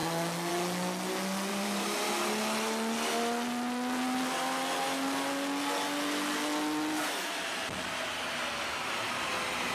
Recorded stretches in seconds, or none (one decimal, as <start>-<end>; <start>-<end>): 0.0-1.5; 2.1-9.7